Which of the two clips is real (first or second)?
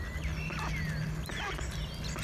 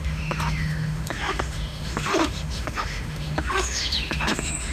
first